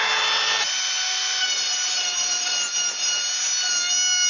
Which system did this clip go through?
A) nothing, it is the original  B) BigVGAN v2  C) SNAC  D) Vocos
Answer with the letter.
A